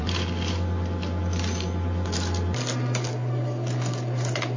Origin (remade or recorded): recorded